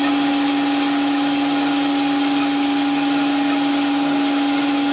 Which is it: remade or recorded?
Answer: recorded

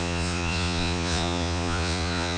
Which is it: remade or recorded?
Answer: remade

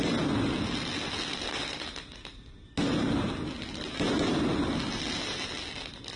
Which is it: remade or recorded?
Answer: recorded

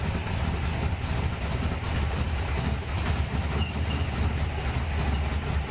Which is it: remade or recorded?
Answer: recorded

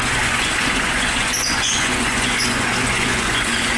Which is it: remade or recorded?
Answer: remade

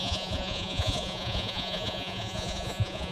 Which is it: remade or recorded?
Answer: remade